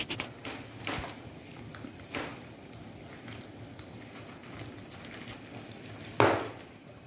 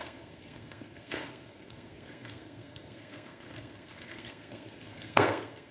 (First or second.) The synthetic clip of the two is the second